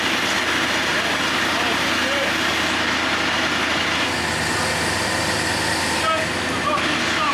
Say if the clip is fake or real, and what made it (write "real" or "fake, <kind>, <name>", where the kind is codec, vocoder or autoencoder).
real